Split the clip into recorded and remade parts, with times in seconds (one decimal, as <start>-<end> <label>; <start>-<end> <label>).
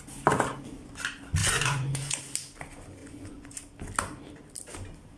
0.0-1.4 recorded; 1.4-2.2 remade; 2.2-3.0 recorded; 3.0-3.5 remade; 3.5-5.2 recorded